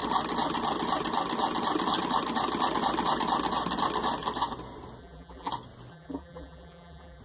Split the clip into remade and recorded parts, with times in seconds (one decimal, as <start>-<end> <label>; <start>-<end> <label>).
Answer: 0.0-5.0 recorded; 5.0-5.5 remade; 5.5-5.9 recorded; 5.9-7.2 remade